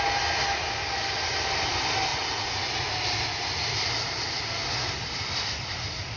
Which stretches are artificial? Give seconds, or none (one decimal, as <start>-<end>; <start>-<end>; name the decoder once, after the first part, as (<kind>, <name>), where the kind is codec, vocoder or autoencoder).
2.1-2.9 (vocoder, Vocos)